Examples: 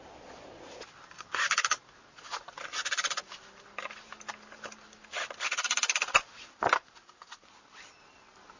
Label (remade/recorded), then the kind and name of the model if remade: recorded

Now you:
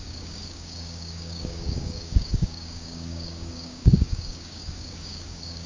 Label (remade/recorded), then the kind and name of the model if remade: remade, codec, DAC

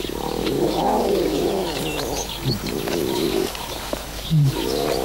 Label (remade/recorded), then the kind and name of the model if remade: remade, codec, DAC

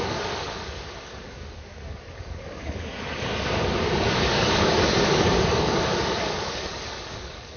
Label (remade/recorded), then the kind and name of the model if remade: remade, codec, DAC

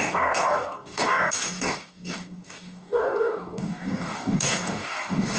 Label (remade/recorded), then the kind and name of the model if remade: remade, codec, DAC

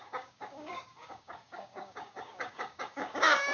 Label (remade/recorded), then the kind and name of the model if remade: remade, codec, DAC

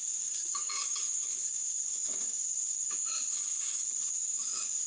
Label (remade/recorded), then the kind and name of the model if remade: remade, codec, DAC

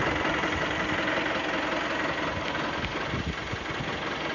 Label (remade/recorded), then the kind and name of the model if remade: recorded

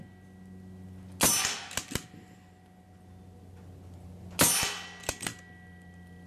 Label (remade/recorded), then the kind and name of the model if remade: recorded